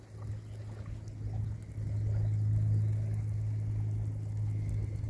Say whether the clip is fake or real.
real